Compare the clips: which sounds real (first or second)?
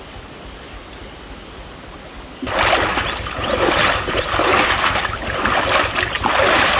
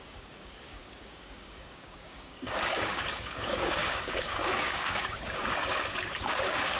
first